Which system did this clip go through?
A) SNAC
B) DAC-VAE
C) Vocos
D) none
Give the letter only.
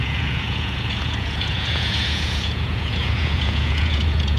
C